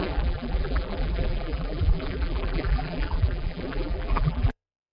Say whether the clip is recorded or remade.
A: remade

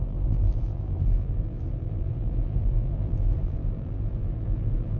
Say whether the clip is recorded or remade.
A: remade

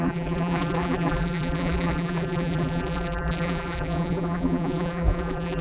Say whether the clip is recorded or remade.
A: remade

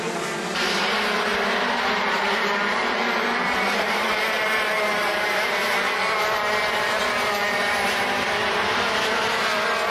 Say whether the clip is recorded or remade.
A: remade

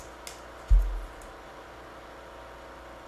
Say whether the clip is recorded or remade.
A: recorded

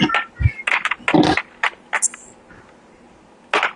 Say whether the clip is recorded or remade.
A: recorded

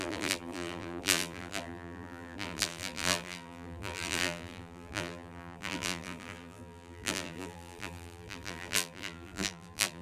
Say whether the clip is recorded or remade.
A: remade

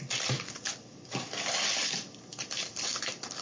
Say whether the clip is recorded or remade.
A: recorded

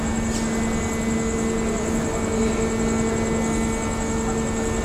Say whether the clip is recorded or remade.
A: recorded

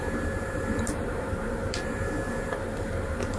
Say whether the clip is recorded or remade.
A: remade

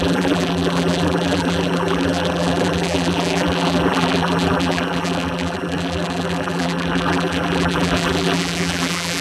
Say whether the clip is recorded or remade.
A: remade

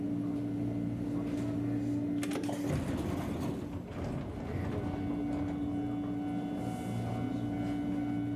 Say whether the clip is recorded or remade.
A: recorded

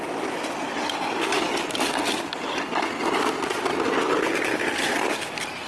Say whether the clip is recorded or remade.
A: recorded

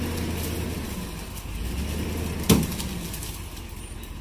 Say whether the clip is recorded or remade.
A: recorded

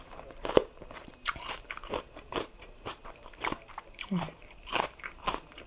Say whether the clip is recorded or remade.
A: remade